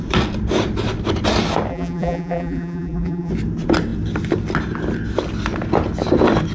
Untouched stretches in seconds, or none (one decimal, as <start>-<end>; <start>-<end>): 0.0-1.7; 3.3-6.5